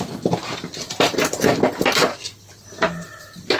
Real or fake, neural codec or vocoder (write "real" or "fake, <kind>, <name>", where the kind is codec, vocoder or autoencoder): real